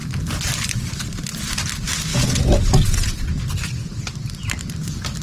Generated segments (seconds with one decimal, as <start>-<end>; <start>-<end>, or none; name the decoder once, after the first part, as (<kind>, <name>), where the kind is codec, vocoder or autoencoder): 2.1-3.4 (vocoder, Vocos)